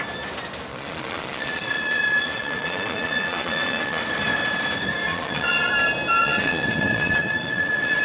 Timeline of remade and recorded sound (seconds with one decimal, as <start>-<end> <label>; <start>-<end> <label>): 0.0-0.7 recorded; 0.7-4.0 remade; 4.0-5.1 recorded; 5.1-5.7 remade; 5.7-6.2 recorded; 6.2-8.0 remade